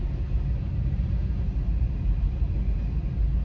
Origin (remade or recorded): recorded